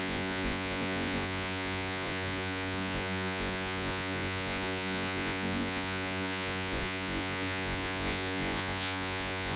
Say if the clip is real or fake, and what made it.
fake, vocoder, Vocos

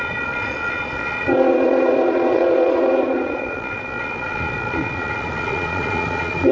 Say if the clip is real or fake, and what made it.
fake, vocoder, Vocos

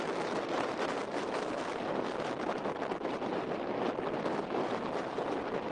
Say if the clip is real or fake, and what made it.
real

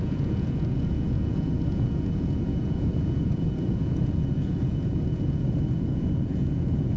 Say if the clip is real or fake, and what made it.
fake, vocoder, Vocos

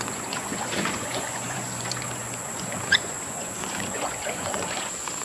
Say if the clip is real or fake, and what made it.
fake, vocoder, Vocos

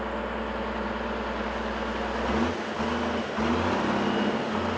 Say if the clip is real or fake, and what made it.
real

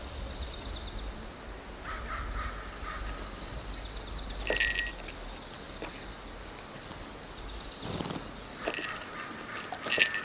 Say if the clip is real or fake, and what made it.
real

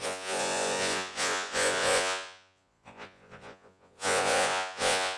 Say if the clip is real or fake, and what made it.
fake, vocoder, Vocos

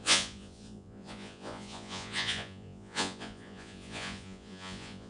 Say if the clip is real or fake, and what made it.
fake, vocoder, Vocos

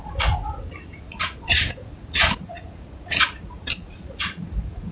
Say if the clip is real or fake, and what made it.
fake, vocoder, Vocos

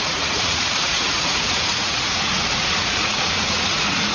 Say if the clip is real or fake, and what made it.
fake, vocoder, Vocos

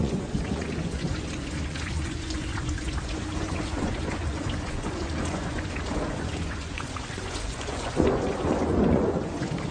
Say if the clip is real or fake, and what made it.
fake, vocoder, Vocos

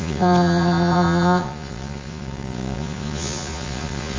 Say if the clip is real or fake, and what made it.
fake, vocoder, Vocos